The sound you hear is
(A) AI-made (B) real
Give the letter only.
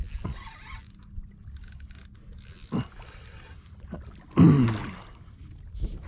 B